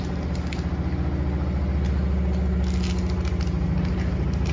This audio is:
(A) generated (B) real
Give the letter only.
B